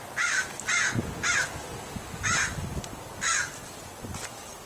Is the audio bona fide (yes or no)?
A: yes